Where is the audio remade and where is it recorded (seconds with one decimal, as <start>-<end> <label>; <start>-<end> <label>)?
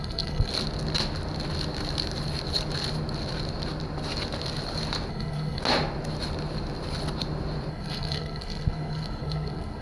0.0-0.5 remade; 0.5-5.1 recorded; 5.1-5.6 remade; 5.6-7.7 recorded; 7.7-9.8 remade